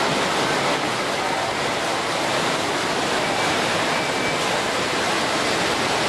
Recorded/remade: recorded